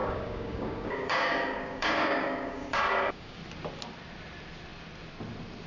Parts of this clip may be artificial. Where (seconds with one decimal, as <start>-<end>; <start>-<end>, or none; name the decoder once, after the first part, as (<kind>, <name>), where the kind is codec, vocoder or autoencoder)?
0.0-3.4 (codec, DAC)